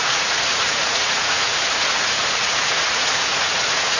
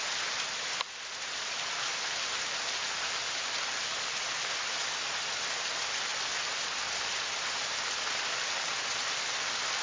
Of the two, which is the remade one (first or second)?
first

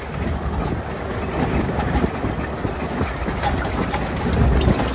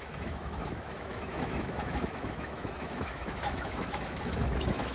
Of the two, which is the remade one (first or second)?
second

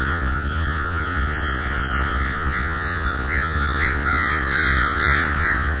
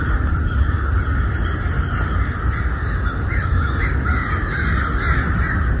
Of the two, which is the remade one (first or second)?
first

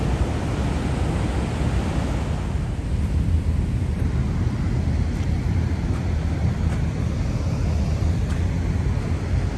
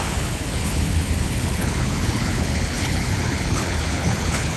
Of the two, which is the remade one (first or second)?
second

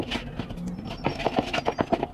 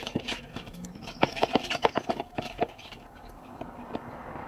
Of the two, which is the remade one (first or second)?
second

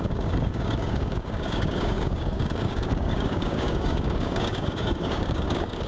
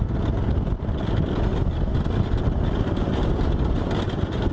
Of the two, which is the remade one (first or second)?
first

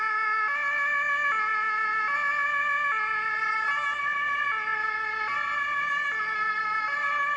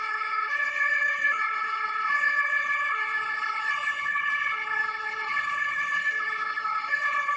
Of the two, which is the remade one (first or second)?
second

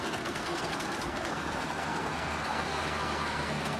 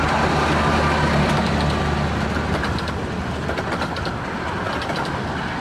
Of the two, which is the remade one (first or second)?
first